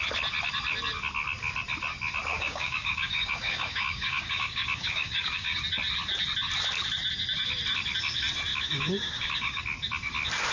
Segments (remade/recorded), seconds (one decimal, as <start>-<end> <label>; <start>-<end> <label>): 0.0-2.3 recorded; 2.3-5.6 remade; 5.6-8.5 recorded; 8.5-9.6 remade; 9.6-10.5 recorded